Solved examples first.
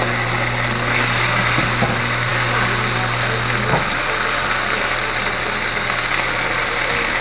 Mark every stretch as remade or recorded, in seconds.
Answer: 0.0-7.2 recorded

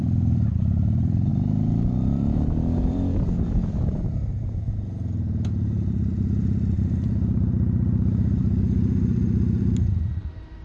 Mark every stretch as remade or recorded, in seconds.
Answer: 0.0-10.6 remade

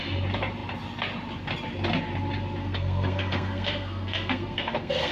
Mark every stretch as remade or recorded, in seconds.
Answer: 0.0-2.6 recorded; 2.6-5.1 remade

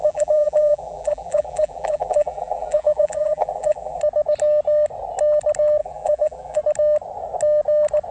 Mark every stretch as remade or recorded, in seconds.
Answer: 0.0-4.0 remade; 4.0-5.8 recorded; 5.8-6.6 remade; 6.6-8.1 recorded

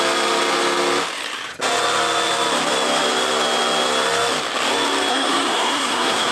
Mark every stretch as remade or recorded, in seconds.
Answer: 0.0-5.1 recorded; 5.1-6.3 remade